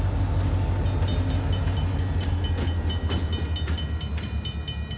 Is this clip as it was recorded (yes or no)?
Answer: yes